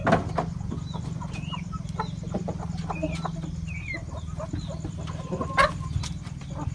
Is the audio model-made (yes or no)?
no